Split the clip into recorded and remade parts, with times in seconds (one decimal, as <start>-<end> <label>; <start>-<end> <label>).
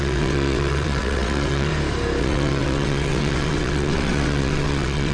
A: 0.0-1.7 remade; 1.7-2.2 recorded; 2.2-5.1 remade